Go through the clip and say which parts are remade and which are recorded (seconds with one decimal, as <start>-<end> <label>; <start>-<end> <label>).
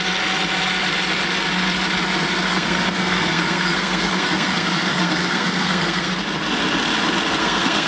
0.0-2.5 recorded; 2.5-6.1 remade; 6.1-7.4 recorded; 7.4-7.9 remade